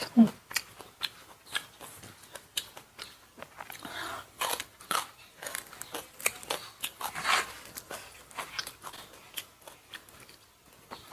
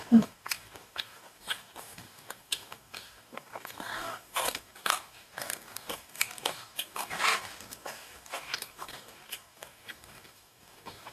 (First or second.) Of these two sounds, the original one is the first